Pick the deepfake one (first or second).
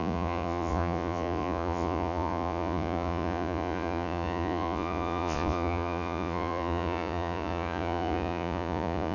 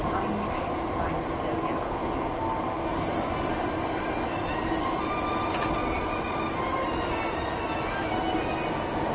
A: first